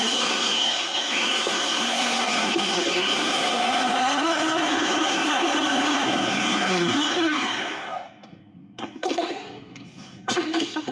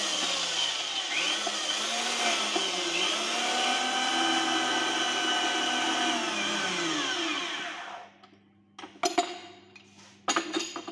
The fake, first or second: first